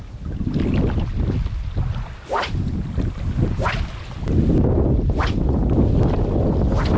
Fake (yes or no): no